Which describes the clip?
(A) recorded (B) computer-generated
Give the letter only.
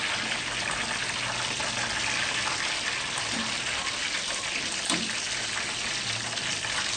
A